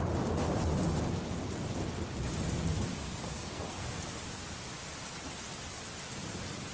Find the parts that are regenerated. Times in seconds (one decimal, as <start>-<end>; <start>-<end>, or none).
2.9-4.0